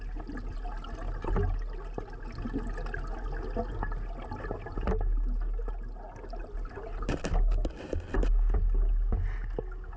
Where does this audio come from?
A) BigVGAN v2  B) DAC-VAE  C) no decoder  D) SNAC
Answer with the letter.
C